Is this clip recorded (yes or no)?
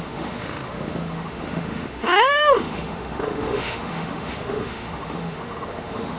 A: no